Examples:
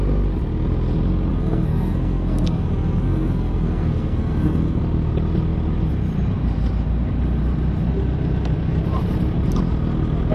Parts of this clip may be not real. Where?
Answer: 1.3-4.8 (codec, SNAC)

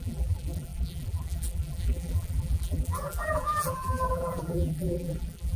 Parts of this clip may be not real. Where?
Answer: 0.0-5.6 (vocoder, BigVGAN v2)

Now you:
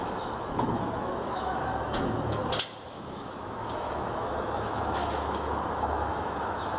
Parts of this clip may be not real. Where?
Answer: 0.0-2.4 (autoencoder, DAC-VAE); 2.9-6.8

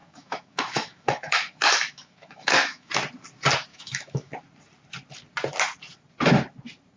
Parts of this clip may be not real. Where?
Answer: 0.0-2.9 (autoencoder, DAC-VAE); 3.7-4.3

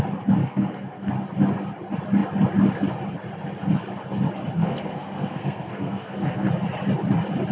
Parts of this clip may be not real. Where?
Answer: 0.4-1.1 (codec, SNAC); 4.6-6.5